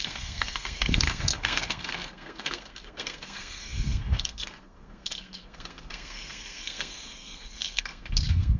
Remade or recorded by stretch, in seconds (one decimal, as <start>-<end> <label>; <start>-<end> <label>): 0.0-8.6 remade